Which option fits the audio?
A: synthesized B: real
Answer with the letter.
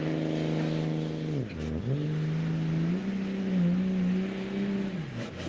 B